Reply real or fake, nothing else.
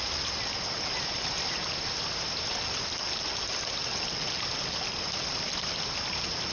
real